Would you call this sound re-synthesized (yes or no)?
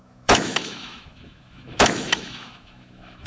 yes